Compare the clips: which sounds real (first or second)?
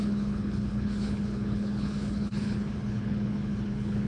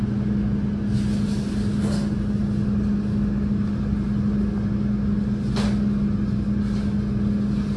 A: second